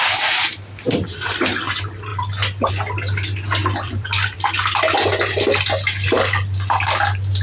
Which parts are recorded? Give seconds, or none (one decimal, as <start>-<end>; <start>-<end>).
0.0-3.6; 4.6-7.4